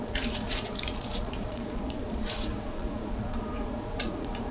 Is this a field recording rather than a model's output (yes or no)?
no